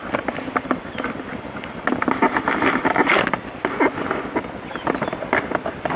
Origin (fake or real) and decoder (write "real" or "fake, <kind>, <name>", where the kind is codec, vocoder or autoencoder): real